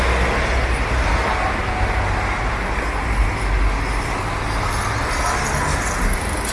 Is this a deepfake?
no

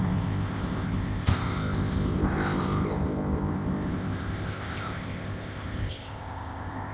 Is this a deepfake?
yes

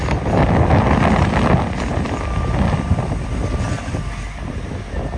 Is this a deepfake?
no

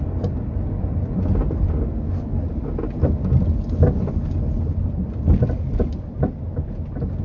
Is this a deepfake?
no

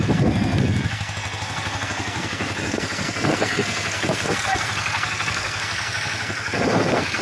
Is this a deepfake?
yes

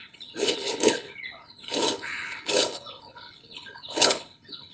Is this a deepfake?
yes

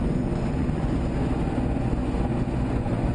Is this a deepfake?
yes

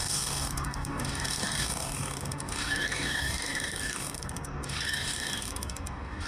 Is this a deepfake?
yes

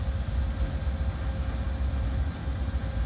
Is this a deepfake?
no